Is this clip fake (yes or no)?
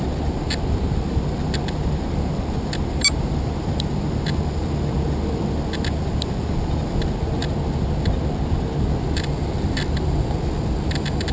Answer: no